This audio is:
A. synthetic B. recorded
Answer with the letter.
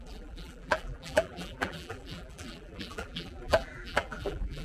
A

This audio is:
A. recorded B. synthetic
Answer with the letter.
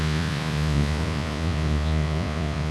B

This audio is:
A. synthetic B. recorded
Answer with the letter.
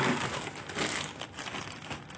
B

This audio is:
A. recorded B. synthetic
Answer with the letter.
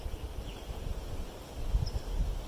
A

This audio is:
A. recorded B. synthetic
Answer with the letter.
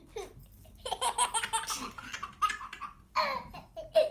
A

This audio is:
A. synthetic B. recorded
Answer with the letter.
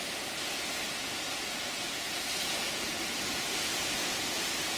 A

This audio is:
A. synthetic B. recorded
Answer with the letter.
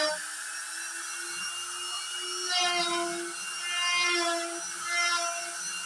B